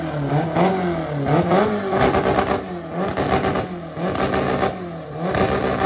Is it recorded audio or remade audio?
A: recorded